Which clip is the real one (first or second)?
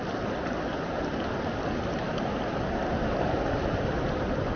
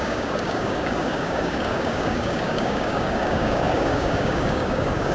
first